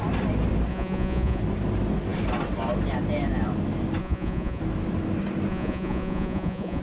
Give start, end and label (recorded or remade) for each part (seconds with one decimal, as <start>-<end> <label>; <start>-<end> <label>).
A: 0.0-0.7 recorded; 0.7-1.4 remade; 1.4-4.0 recorded; 4.0-4.6 remade; 4.6-5.5 recorded; 5.5-6.8 remade